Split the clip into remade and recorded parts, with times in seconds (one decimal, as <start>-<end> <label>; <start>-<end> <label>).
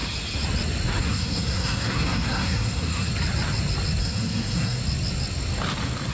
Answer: 0.0-1.0 recorded; 1.0-3.1 remade; 3.1-4.0 recorded; 4.0-4.8 remade; 4.8-6.1 recorded